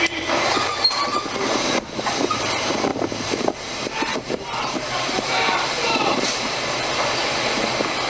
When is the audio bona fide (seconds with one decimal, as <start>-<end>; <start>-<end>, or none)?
0.0-2.9; 6.9-8.1